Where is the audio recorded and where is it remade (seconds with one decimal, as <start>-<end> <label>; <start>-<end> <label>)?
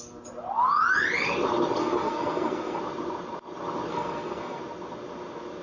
0.0-1.8 recorded; 1.8-2.8 remade; 2.8-3.9 recorded; 3.9-4.6 remade; 4.6-5.6 recorded